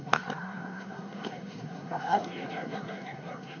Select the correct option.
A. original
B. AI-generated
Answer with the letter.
B